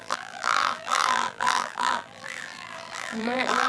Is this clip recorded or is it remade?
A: remade